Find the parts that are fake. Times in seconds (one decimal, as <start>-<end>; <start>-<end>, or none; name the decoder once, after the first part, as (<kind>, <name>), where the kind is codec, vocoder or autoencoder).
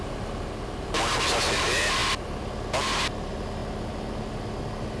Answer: none